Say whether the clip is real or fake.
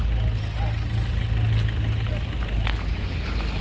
real